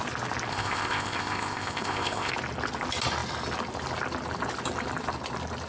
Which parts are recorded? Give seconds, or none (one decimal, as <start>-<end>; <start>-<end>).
0.0-0.5; 2.3-5.7